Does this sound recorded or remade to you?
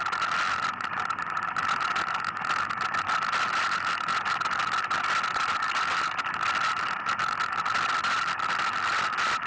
recorded